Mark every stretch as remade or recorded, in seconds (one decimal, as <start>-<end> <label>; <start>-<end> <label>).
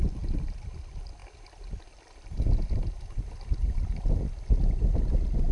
0.0-5.5 recorded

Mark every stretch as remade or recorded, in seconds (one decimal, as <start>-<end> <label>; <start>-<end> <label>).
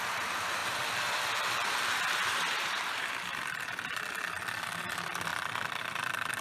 0.0-6.4 remade